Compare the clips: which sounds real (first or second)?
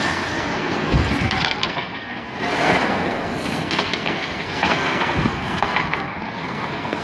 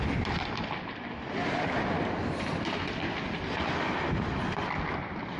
second